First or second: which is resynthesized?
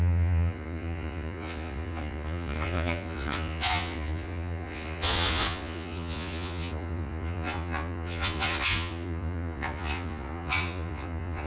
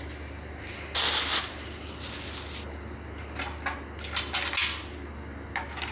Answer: first